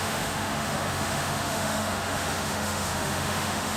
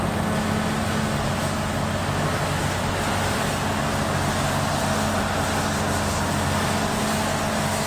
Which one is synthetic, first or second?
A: first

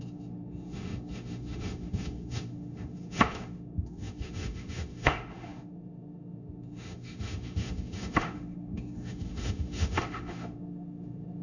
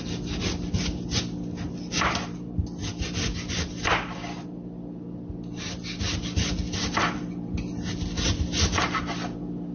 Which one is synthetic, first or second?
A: first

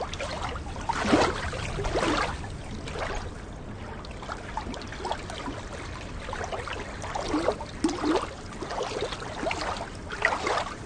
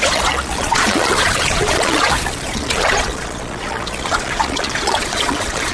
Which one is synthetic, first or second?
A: second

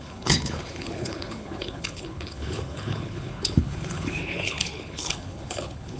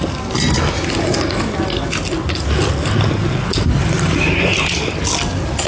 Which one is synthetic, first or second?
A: first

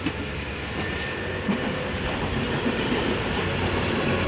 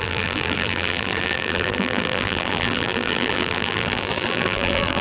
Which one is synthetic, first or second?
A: second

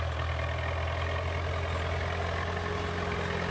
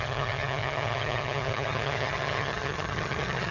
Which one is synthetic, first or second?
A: second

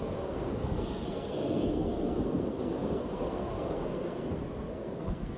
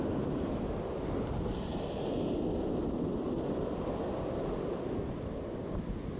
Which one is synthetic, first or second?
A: first